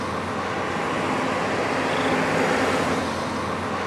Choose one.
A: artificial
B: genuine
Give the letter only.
B